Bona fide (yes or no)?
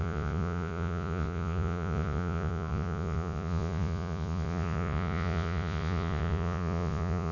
no